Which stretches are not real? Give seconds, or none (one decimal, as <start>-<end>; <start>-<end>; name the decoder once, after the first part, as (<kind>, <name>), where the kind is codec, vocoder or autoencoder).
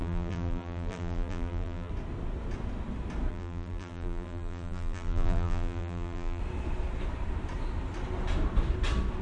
0.0-1.9 (vocoder, BigVGAN v2); 3.3-6.4